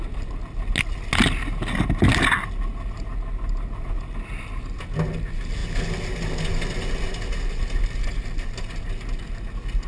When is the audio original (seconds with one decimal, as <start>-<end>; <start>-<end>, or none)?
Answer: 0.0-9.9